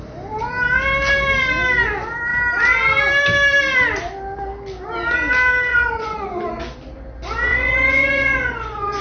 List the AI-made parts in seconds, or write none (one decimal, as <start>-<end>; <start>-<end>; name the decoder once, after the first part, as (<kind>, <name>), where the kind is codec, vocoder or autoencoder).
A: 5.7-6.6 (vocoder, Vocos); 7.5-9.0